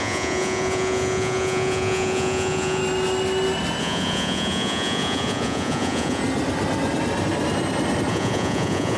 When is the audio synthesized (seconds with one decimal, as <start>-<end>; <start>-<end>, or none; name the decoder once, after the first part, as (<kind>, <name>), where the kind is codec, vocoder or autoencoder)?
0.0-2.8 (vocoder, Vocos); 3.8-6.2; 8.1-9.0